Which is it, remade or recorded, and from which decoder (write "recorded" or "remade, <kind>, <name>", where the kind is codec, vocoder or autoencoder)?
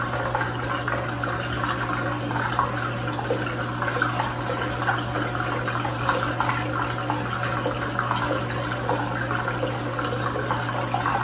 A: recorded